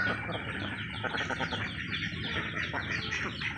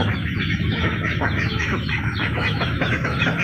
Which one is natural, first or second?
first